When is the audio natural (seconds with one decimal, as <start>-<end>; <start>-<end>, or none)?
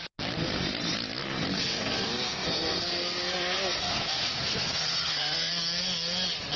0.0-1.5; 5.5-6.6